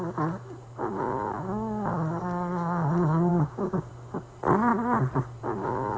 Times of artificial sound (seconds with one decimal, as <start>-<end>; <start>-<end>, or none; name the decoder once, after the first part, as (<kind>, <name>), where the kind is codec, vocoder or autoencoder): 3.3-3.9 (codec, DAC)